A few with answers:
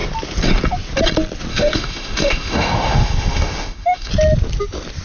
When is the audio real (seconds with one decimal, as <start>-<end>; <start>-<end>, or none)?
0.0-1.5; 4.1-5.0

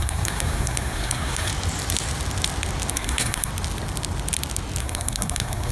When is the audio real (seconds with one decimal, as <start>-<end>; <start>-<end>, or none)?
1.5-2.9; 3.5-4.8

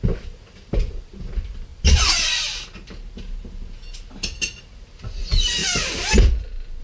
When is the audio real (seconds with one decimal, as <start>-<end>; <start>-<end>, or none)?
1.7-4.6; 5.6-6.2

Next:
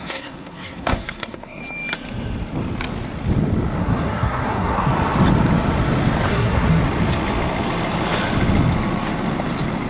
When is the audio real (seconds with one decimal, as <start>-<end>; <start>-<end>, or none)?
1.6-3.8; 4.9-6.3; 6.8-9.9